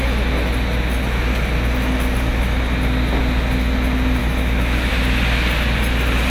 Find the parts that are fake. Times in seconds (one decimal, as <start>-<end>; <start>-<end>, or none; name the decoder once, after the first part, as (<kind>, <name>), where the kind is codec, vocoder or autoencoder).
4.2-4.9 (autoencoder, DAC-VAE)